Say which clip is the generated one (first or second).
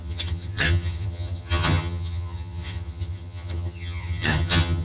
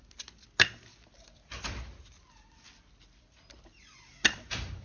first